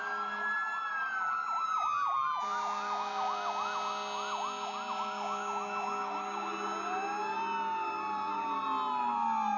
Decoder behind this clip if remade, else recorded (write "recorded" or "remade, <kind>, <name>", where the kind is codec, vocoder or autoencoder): recorded